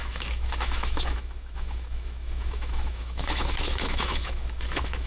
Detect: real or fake fake